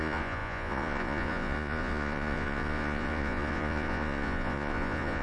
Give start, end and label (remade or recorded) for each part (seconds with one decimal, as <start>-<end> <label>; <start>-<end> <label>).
0.0-5.2 remade